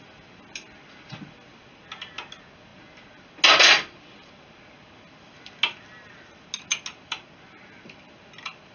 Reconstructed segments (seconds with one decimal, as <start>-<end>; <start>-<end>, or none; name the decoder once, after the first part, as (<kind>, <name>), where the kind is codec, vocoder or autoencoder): none